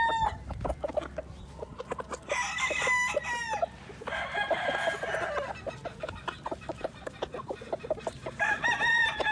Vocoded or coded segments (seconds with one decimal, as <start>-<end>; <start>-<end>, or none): 0.0-0.9; 3.8-9.3